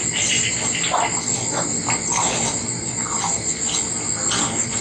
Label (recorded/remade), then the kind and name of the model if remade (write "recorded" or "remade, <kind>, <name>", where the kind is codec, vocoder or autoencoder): recorded